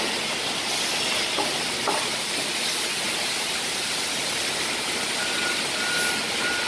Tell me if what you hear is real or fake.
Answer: real